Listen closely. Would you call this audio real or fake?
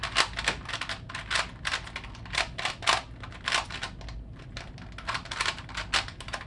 real